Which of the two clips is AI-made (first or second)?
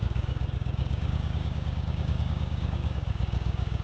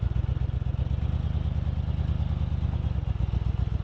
first